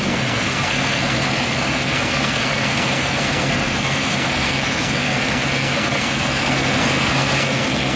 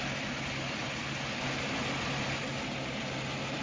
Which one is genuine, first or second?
second